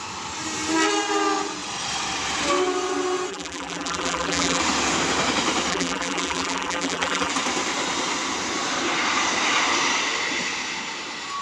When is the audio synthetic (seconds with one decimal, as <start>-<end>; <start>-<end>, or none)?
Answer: 3.3-4.6; 5.7-7.3